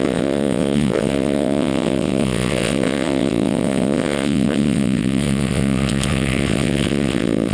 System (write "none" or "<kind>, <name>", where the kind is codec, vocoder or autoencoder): vocoder, WaveNeXt